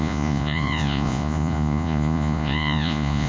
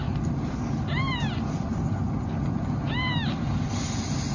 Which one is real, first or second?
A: second